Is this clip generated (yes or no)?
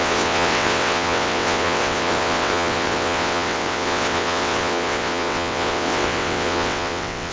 yes